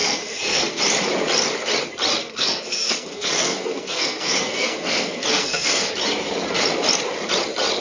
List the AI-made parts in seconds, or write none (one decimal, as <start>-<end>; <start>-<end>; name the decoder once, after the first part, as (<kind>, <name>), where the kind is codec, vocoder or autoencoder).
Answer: 0.0-0.8 (codec, SNAC); 2.2-5.9